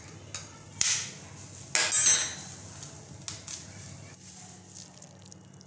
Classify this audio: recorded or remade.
recorded